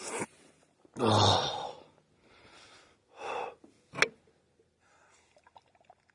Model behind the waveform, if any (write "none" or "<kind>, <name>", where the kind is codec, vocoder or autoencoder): none